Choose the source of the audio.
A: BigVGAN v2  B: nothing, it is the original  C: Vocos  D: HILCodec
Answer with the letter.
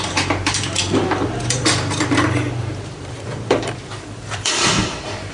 A